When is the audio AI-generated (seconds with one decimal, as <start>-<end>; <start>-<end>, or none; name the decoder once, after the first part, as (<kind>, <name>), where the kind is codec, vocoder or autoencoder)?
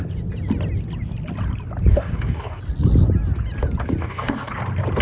1.9-2.6 (codec, DAC); 4.0-4.5